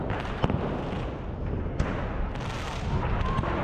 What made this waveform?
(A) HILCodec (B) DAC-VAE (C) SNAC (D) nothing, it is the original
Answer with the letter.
D